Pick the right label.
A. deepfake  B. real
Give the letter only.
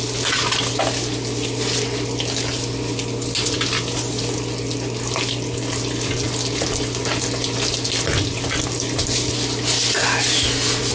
B